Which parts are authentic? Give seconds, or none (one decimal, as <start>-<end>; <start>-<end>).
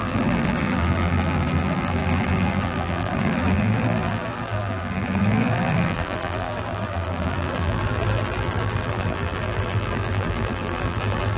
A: none